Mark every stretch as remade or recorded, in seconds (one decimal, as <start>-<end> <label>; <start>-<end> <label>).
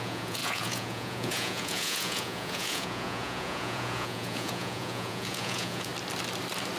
0.0-5.9 remade; 5.9-6.8 recorded